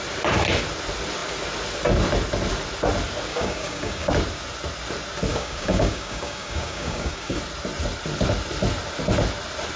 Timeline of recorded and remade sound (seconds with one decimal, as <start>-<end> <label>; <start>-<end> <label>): 0.0-3.3 recorded; 3.3-4.1 remade; 4.1-5.3 recorded; 5.3-7.4 remade; 7.4-9.8 recorded